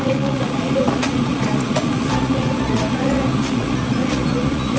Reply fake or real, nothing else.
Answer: fake